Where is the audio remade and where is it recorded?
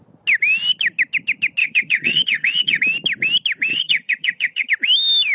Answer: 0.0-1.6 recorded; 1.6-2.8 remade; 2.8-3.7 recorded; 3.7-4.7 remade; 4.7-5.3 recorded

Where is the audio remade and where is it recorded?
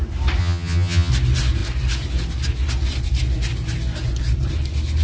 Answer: 0.0-0.4 recorded; 0.4-1.1 remade; 1.1-5.0 recorded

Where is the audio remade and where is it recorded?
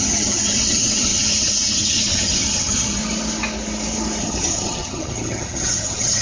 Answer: 0.0-3.0 remade; 3.0-4.2 recorded; 4.2-6.2 remade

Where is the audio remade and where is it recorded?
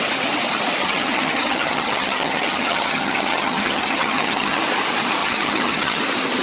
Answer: 0.0-0.8 recorded; 0.8-4.6 remade; 4.6-5.2 recorded; 5.2-6.0 remade; 6.0-6.4 recorded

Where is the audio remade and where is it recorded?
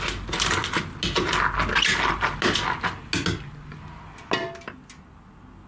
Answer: 0.0-5.7 recorded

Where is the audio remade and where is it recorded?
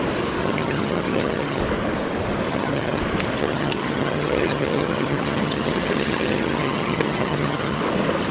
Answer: 0.0-0.4 recorded; 0.4-1.6 remade; 1.6-2.5 recorded; 2.5-3.0 remade; 3.0-3.4 recorded; 3.4-7.8 remade; 7.8-8.3 recorded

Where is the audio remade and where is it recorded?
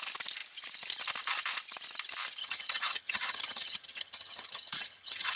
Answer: 0.0-2.4 recorded; 2.4-5.4 remade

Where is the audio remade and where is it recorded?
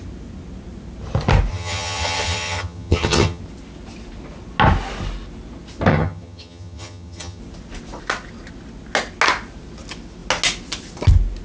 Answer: 0.0-1.5 recorded; 1.5-3.4 remade; 3.4-5.9 recorded; 5.9-7.4 remade; 7.4-11.4 recorded